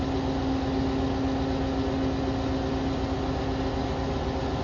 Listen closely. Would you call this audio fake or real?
real